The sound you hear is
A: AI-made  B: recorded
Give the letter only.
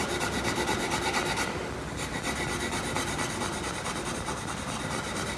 B